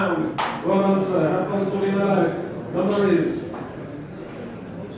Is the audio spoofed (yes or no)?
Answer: no